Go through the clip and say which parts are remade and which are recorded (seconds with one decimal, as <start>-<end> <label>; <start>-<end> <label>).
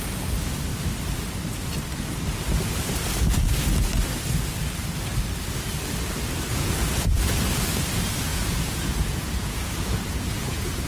0.0-6.5 recorded; 6.5-7.3 remade; 7.3-8.3 recorded; 8.3-10.9 remade